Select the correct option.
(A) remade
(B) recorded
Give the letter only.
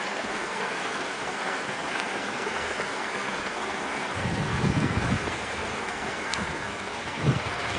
A